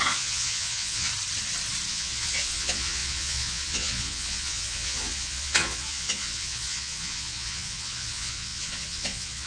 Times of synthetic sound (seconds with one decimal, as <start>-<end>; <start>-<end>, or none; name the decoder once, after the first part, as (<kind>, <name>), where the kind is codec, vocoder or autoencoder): 0.0-1.1 (vocoder, Vocos); 1.9-9.5